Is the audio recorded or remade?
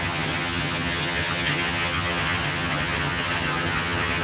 remade